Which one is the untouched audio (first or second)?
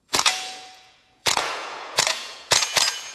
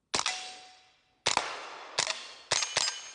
second